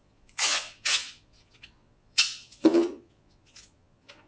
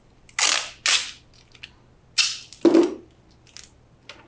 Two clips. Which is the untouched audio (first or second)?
second